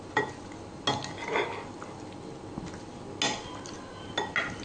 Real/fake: real